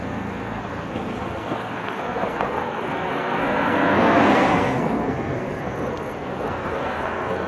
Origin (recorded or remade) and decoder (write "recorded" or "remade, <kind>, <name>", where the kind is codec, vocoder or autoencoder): remade, codec, SNAC